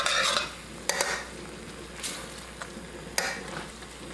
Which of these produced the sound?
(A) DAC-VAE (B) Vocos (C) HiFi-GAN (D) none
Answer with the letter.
D